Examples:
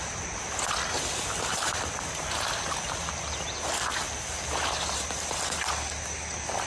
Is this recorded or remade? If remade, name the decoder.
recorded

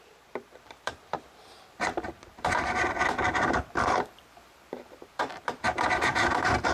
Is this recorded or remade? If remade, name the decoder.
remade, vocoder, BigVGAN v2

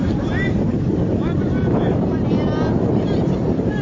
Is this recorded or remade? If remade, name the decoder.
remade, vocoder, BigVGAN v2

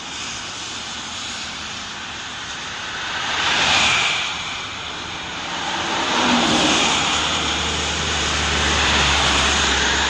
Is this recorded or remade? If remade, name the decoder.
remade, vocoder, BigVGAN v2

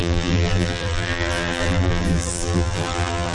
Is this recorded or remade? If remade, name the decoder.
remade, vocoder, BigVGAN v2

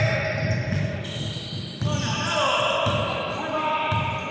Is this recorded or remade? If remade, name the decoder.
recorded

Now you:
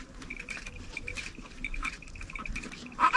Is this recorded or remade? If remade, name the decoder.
remade, vocoder, BigVGAN v2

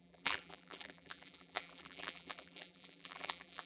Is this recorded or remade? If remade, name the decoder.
remade, vocoder, BigVGAN v2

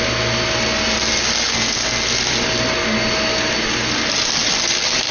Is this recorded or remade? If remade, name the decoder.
recorded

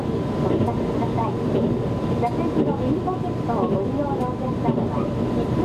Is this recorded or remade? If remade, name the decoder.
recorded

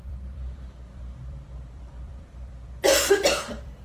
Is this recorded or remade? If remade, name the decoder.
remade, vocoder, BigVGAN v2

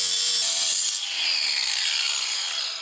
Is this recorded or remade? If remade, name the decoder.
recorded